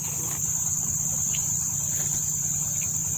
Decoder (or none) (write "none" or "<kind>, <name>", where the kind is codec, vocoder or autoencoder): none